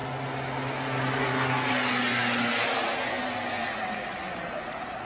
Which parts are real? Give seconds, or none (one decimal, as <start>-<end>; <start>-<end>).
0.0-5.0